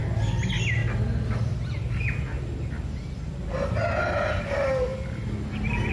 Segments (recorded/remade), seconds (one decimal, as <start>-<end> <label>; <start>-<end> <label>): 0.0-5.9 recorded